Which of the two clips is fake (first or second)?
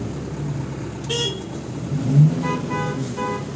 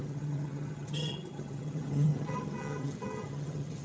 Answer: second